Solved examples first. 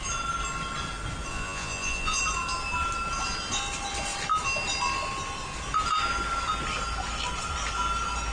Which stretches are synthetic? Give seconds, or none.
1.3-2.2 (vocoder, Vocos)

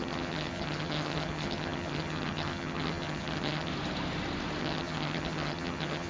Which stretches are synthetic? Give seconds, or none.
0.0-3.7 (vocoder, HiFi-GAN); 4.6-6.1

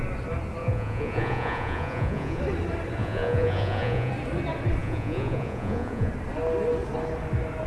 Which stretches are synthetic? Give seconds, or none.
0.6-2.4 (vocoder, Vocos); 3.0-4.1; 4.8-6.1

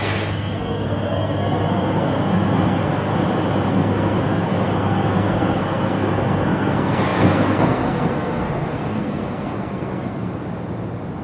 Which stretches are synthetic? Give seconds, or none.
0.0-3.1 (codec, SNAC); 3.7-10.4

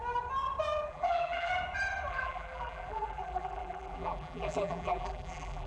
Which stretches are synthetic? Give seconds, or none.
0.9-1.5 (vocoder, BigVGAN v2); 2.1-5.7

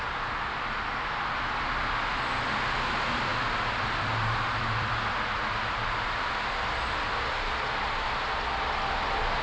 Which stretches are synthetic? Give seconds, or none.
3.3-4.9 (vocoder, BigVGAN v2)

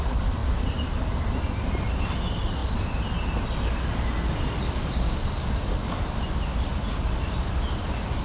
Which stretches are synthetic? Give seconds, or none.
5.4-6.0 (codec, DAC)

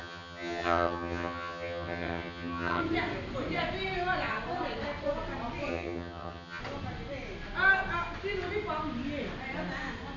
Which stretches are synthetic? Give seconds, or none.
0.0-2.8 (vocoder, HiFi-GAN); 5.7-6.6